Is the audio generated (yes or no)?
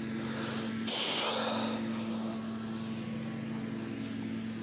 no